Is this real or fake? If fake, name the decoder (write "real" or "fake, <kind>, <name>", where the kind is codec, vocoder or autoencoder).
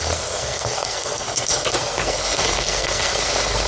fake, codec, SNAC